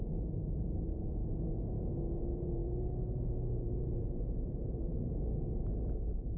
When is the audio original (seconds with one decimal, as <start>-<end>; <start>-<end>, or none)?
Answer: 1.2-2.2

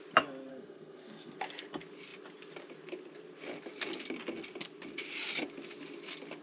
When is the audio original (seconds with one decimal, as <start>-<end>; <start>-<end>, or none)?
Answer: 0.0-0.5; 1.4-6.4

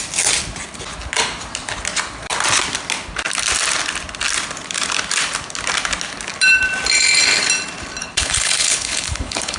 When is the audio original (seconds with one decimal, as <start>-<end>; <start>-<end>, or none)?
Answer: 0.0-8.0

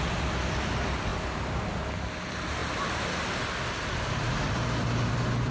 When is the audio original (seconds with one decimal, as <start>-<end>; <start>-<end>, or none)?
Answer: 0.0-3.9

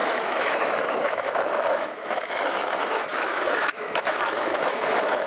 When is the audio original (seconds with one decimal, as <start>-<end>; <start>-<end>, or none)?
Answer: none

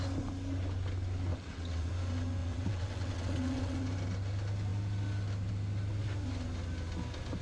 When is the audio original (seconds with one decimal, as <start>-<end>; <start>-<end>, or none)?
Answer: 0.0-1.3; 1.9-2.4; 3.8-7.4

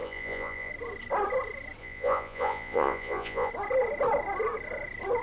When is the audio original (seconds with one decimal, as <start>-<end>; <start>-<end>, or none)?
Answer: 0.7-1.8; 3.5-5.2